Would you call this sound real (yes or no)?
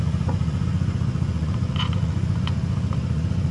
no